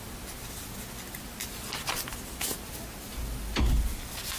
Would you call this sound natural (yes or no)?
yes